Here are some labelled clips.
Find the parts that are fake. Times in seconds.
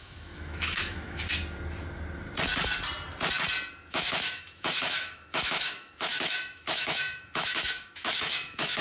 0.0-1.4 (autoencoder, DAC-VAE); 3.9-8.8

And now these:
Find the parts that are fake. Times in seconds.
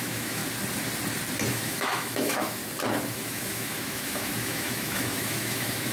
0.0-0.4 (autoencoder, DAC-VAE); 1.5-2.6; 3.1-5.9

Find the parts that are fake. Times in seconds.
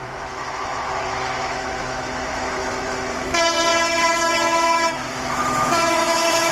0.0-6.5 (autoencoder, DAC-VAE)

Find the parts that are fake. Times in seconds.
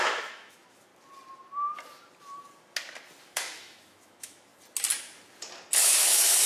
0.0-0.9 (autoencoder, DAC-VAE); 3.2-4.5; 5.8-6.5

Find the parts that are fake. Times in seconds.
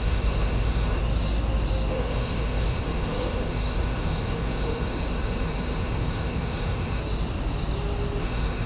0.0-1.0 (autoencoder, DAC-VAE); 1.9-7.0; 8.2-8.7